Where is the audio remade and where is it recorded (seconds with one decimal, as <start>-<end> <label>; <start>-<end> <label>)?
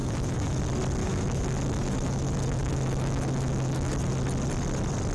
0.0-0.6 remade; 0.6-1.0 recorded; 1.0-4.1 remade; 4.1-5.1 recorded